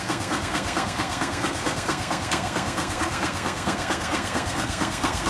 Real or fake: fake